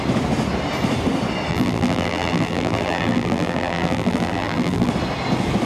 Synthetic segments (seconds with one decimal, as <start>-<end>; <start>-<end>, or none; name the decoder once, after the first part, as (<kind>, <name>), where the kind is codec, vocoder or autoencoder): 1.5-4.9 (vocoder, BigVGAN v2)